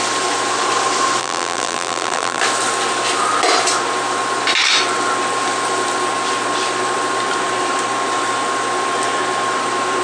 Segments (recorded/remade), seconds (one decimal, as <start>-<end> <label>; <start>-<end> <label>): 0.0-1.2 recorded; 1.2-2.4 remade; 2.4-10.0 recorded